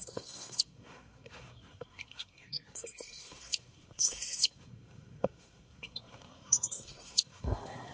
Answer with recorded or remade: remade